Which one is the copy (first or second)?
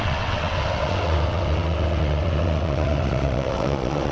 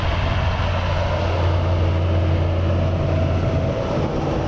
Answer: first